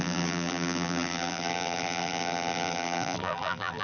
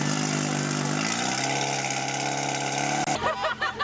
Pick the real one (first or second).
second